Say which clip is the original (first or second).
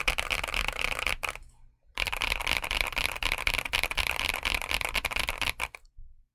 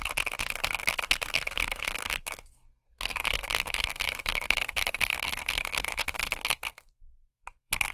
first